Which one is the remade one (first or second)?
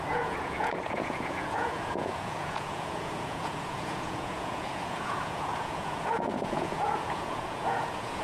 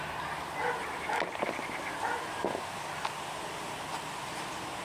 first